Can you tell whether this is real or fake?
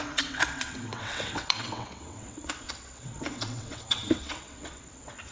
fake